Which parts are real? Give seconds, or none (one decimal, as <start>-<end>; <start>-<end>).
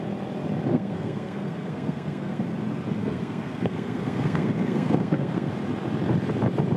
0.0-0.7; 2.4-3.0; 5.5-6.8